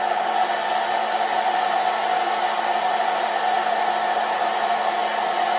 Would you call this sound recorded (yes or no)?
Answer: yes